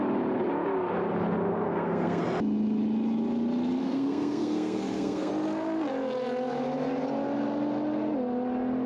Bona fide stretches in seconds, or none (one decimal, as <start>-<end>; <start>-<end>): 0.0-1.5; 2.2-3.8; 5.3-8.9